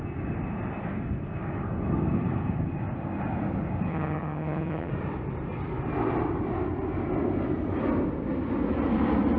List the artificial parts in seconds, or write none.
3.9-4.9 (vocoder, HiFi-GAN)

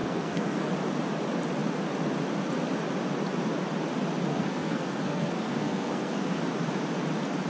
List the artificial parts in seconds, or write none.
0.0-0.7 (codec, SNAC); 4.3-6.4

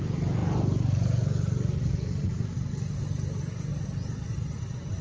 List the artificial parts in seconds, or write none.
none

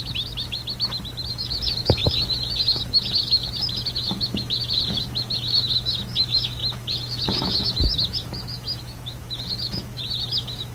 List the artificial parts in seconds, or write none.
0.0-0.6 (autoencoder, DAC-VAE); 1.3-10.7

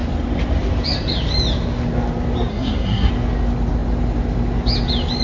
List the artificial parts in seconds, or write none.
2.5-3.1 (codec, SNAC)

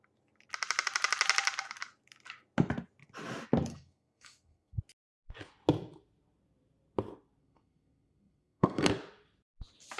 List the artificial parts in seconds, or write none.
3.7-4.8 (codec, SNAC); 7.4-8.9

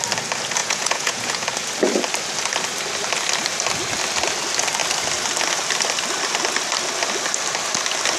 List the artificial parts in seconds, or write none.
0.6-1.5 (vocoder, Vocos)